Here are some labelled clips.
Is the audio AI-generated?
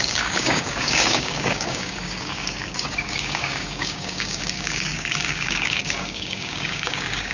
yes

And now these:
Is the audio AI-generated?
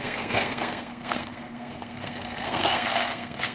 yes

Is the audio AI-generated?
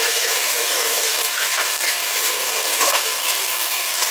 yes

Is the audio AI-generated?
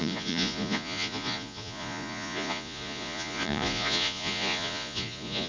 yes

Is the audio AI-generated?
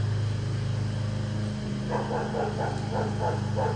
no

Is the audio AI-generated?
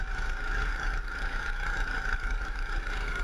yes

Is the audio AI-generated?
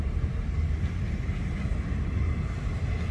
no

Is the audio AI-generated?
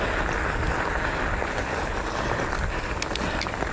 no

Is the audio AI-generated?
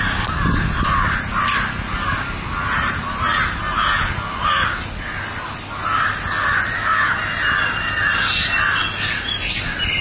no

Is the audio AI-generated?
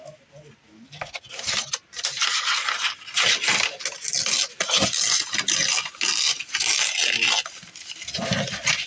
no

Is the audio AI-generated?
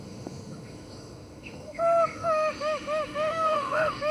yes